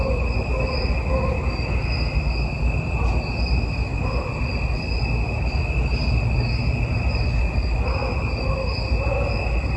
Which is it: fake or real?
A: real